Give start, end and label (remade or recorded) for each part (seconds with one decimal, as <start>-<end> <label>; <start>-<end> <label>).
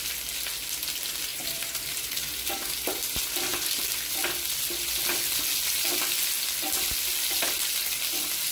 0.0-1.3 recorded; 1.3-3.0 remade; 3.0-8.5 recorded